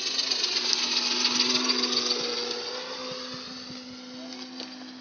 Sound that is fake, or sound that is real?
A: real